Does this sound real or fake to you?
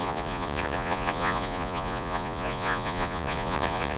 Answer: fake